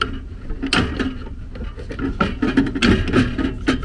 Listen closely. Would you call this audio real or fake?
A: real